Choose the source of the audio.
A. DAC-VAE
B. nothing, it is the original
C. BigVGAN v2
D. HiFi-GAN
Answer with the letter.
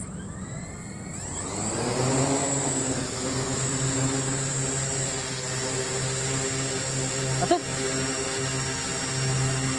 B